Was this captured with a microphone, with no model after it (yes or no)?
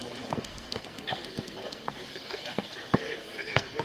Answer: no